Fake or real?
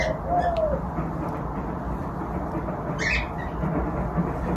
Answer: real